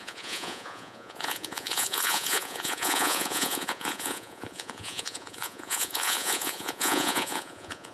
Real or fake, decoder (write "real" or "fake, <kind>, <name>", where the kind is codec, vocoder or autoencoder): fake, vocoder, Vocos